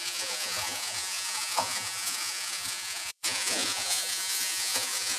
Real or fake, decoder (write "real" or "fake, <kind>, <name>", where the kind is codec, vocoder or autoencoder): fake, vocoder, Vocos